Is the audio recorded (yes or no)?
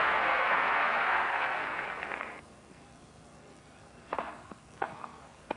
no